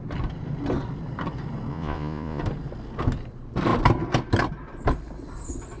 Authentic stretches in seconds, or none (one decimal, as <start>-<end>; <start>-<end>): 0.0-1.7; 2.4-5.8